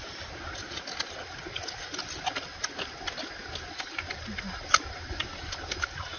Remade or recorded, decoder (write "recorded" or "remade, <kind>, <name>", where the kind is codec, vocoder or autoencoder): recorded